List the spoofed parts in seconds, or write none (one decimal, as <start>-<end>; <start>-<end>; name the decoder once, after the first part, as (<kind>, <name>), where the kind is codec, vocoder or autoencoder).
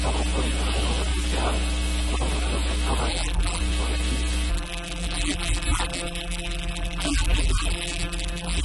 3.1-3.6 (vocoder, BigVGAN v2); 4.5-8.6